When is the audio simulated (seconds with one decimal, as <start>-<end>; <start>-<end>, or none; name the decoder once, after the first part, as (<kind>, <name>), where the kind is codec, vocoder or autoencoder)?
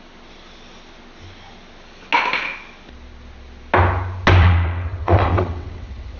4.4-6.2 (vocoder, WaveNeXt)